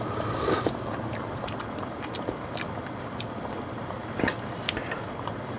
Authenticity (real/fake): real